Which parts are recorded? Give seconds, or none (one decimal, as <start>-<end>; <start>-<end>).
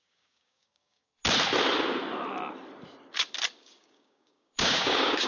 1.2-3.6